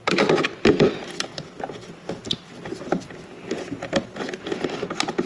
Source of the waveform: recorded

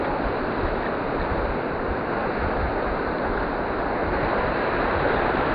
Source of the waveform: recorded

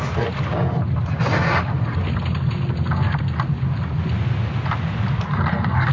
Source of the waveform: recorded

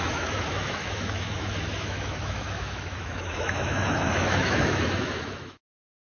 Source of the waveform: remade